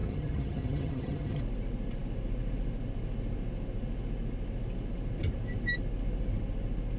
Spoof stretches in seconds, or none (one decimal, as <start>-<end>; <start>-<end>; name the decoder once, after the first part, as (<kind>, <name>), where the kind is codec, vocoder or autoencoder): 0.0-1.4 (vocoder, HiFi-GAN)